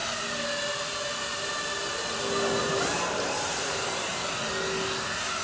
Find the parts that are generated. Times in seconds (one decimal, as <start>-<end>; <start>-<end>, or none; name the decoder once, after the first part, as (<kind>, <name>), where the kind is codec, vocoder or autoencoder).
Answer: 2.6-4.1 (vocoder, BigVGAN v2)